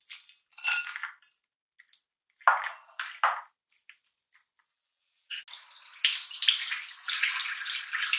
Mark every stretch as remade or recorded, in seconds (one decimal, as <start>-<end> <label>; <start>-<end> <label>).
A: 0.0-4.7 recorded; 4.7-5.4 remade; 5.4-8.2 recorded